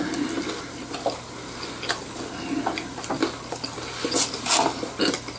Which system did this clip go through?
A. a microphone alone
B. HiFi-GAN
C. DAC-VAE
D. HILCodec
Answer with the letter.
A